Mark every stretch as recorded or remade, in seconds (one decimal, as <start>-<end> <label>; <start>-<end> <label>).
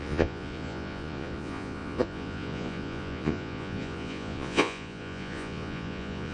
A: 0.0-6.3 remade